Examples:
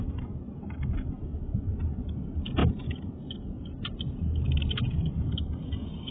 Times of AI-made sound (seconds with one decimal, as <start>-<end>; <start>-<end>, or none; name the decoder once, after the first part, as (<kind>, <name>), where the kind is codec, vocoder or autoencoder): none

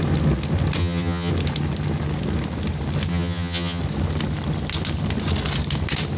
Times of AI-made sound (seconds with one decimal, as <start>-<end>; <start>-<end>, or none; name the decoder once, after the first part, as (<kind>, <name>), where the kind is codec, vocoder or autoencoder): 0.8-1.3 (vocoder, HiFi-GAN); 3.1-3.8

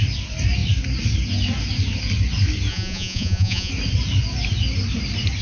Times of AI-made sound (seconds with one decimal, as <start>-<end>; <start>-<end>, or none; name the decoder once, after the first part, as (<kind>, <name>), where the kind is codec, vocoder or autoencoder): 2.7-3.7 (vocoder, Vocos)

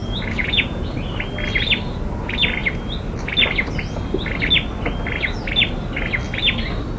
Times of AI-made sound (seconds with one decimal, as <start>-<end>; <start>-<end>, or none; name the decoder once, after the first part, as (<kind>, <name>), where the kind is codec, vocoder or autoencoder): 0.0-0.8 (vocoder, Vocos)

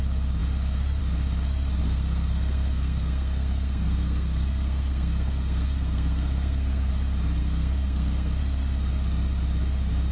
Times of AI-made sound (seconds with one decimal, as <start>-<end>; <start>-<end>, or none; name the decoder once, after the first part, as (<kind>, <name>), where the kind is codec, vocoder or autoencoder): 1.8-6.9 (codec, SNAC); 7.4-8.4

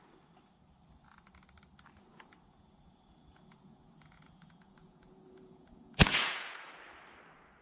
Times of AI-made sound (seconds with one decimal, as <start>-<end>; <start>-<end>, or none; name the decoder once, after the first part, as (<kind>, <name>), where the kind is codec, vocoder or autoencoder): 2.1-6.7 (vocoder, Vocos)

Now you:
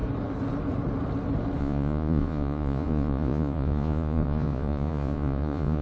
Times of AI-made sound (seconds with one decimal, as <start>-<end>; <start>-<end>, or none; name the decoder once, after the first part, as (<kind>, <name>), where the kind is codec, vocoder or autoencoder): 1.6-5.8 (vocoder, Vocos)